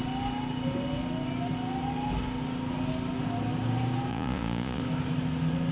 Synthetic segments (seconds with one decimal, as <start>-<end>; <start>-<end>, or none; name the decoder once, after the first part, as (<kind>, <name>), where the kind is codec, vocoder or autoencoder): 4.1-4.8 (vocoder, Vocos)